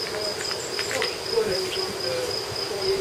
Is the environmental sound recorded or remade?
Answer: recorded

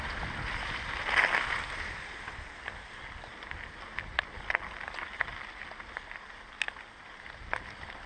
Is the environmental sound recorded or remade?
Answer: recorded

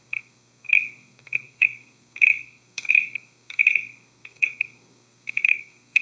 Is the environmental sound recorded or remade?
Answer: remade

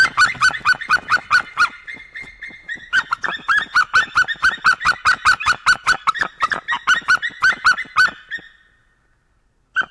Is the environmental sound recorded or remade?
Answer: recorded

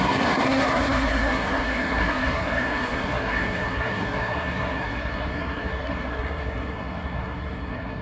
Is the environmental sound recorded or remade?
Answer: remade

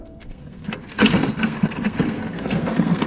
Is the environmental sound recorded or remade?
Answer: remade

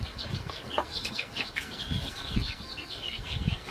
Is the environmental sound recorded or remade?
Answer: remade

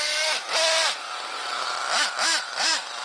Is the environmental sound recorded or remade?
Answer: recorded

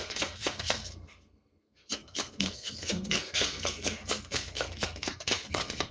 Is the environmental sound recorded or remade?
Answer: remade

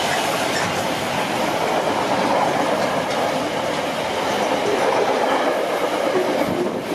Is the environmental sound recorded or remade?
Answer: recorded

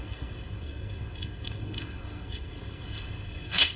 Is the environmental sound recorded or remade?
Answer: remade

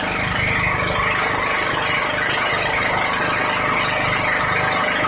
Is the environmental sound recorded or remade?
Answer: recorded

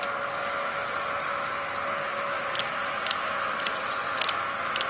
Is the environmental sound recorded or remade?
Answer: recorded